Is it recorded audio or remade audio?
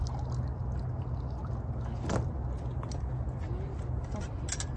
recorded